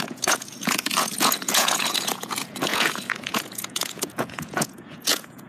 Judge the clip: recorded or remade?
remade